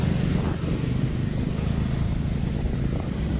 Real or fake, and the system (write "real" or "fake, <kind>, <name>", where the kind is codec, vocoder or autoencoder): real